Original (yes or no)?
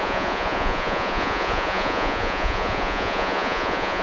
no